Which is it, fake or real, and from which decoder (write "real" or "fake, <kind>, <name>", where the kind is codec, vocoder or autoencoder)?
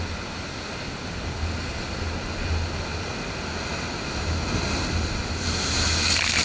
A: real